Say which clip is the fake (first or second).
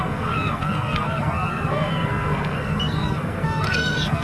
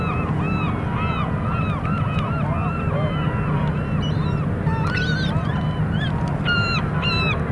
first